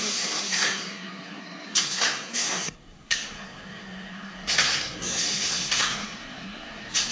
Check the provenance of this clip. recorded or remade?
remade